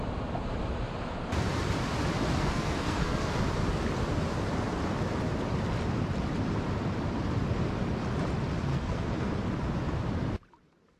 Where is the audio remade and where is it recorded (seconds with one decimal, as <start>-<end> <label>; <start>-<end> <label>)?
0.0-2.4 recorded; 2.4-3.4 remade; 3.4-8.7 recorded; 8.7-9.3 remade; 9.3-11.0 recorded